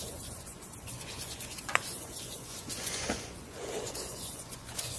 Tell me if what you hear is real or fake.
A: fake